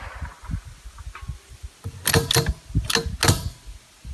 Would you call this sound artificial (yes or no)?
no